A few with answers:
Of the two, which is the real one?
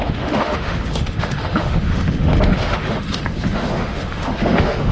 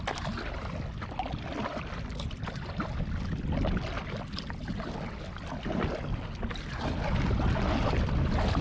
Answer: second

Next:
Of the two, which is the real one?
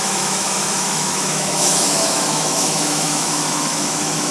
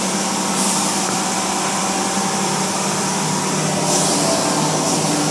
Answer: second